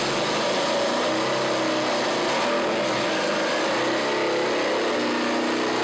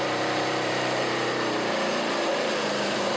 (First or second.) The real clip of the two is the first